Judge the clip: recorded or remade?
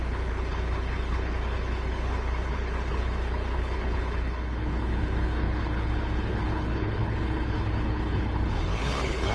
remade